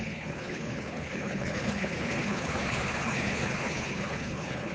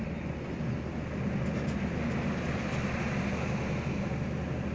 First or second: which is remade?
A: first